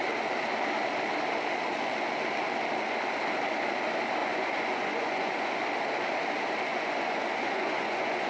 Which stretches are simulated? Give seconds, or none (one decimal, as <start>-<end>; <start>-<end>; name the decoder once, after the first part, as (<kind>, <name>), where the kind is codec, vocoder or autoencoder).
4.2-5.6 (vocoder, Vocos); 6.7-8.3